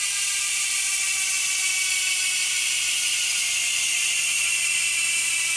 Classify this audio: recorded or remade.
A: recorded